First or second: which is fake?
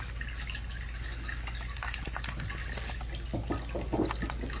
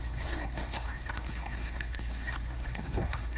second